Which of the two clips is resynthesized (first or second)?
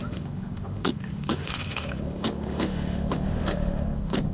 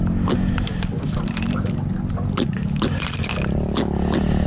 first